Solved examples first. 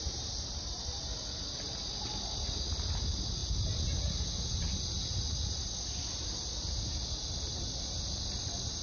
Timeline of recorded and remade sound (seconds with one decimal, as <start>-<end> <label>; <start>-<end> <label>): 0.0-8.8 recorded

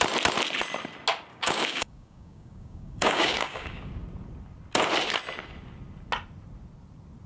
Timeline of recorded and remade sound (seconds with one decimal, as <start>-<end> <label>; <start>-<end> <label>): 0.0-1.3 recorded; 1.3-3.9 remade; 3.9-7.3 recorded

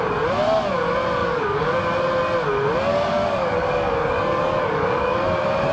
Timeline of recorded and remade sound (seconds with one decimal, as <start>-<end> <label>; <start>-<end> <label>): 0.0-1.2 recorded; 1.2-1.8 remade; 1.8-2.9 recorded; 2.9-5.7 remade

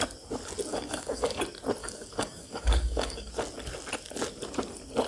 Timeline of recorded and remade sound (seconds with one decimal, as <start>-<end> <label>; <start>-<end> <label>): 0.0-0.7 recorded; 0.7-1.4 remade; 1.4-1.8 recorded; 1.8-3.3 remade; 3.3-5.1 recorded